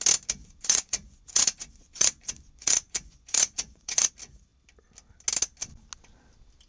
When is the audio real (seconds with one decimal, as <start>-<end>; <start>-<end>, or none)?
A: 0.0-0.4; 4.1-6.7